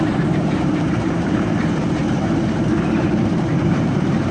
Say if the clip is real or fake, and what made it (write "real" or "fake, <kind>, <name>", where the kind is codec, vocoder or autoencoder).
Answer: fake, vocoder, BigVGAN v2